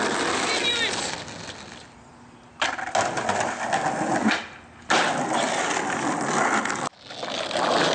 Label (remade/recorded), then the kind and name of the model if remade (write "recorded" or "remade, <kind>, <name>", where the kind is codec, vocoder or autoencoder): recorded